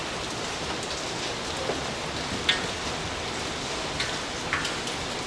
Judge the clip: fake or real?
real